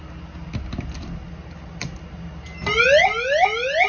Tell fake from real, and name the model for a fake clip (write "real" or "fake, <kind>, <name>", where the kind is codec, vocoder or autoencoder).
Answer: real